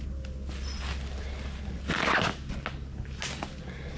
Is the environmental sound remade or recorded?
recorded